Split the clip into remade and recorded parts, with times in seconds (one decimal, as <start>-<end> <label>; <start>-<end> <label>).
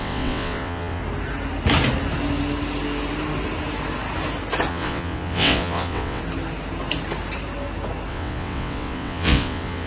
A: 0.0-1.0 remade; 1.0-4.7 recorded; 4.7-6.2 remade; 6.2-8.1 recorded; 8.1-9.9 remade